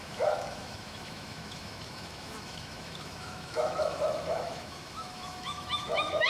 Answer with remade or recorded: remade